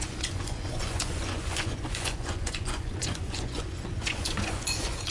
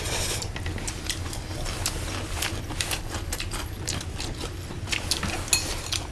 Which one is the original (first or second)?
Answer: second